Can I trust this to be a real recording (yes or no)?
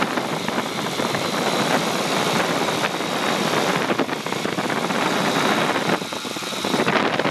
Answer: yes